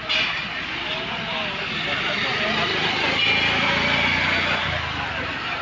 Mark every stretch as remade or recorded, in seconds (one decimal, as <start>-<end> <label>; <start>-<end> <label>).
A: 0.0-5.6 recorded

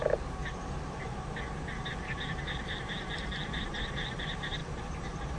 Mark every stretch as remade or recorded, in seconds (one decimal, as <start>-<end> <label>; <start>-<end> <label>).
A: 0.0-0.4 remade; 0.4-3.6 recorded; 3.6-5.4 remade

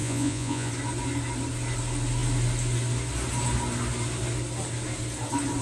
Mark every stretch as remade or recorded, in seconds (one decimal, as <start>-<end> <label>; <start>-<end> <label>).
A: 0.0-0.7 remade; 0.7-5.6 recorded